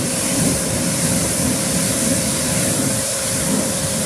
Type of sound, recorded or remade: remade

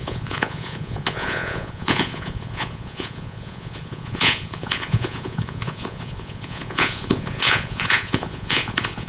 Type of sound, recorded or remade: remade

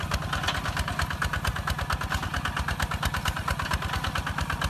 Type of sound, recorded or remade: recorded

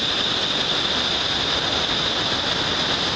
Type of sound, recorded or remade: recorded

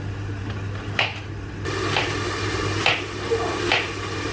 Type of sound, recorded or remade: recorded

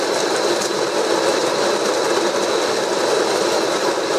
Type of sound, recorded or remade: recorded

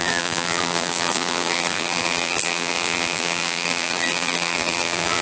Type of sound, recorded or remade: remade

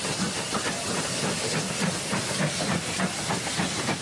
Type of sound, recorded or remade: recorded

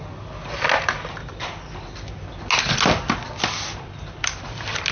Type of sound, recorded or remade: recorded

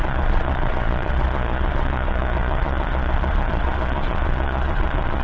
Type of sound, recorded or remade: remade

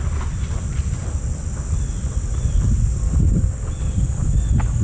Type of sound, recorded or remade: recorded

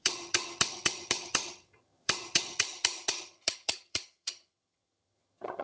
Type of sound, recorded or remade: remade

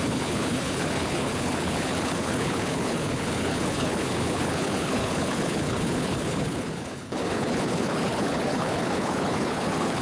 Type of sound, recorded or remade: remade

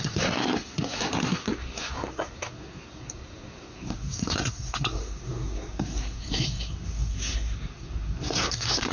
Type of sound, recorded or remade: remade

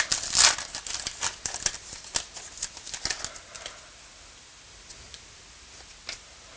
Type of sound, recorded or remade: recorded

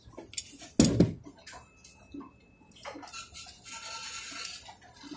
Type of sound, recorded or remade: recorded